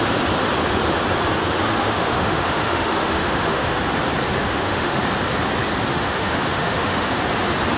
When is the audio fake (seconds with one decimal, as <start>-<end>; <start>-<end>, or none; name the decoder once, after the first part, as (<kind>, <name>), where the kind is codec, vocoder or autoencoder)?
1.7-3.8 (autoencoder, DAC-VAE); 4.4-5.0; 5.9-7.1